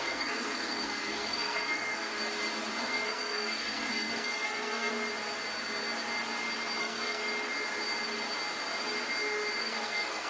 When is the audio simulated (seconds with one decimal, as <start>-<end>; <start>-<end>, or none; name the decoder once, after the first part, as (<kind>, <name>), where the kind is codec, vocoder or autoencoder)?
0.0-2.1 (codec, SNAC); 2.8-4.9; 6.8-7.2; 9.6-10.3